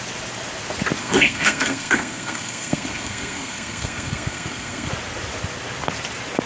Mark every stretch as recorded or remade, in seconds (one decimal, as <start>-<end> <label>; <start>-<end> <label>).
0.0-1.0 recorded; 1.0-4.9 remade; 4.9-6.5 recorded